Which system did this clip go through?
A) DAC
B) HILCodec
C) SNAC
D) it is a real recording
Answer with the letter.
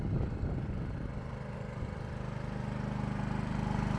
D